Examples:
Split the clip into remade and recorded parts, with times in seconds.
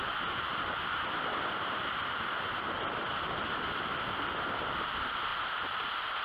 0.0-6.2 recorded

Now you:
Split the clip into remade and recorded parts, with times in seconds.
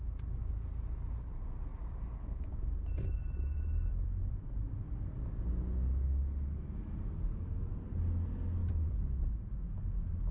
0.0-1.7 recorded; 1.7-4.8 remade; 4.8-8.6 recorded; 8.6-9.3 remade; 9.3-10.3 recorded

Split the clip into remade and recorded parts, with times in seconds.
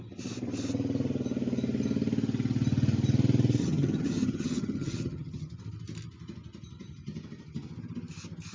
0.0-3.6 recorded; 3.6-5.6 remade; 5.6-8.5 recorded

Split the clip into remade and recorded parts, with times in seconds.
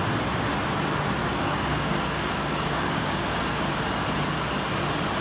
0.0-1.2 recorded; 1.2-3.6 remade; 3.6-5.2 recorded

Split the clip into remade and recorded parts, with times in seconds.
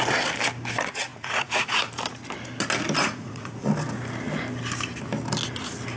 0.0-1.1 recorded; 1.1-1.9 remade; 1.9-3.0 recorded; 3.0-3.7 remade; 3.7-6.0 recorded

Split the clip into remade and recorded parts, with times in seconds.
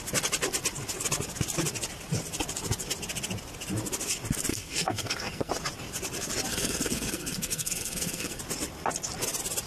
0.0-4.5 recorded; 4.5-5.5 remade; 5.5-6.5 recorded; 6.5-8.4 remade; 8.4-9.7 recorded